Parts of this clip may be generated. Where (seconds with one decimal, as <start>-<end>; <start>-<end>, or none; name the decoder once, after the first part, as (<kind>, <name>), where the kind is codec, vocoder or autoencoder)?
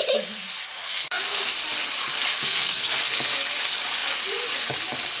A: 0.8-1.5 (codec, SNAC); 2.3-3.0